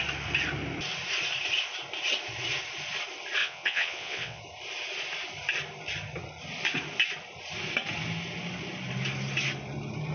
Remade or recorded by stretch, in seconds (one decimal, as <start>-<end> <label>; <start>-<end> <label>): 0.0-3.4 recorded; 3.4-4.4 remade; 4.4-10.1 recorded